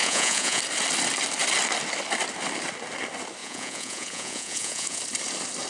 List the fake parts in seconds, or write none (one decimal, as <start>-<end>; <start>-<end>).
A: 0.0-0.6; 3.4-5.0